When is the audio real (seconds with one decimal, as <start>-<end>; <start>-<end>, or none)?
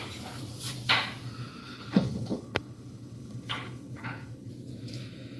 0.0-1.6; 4.5-5.4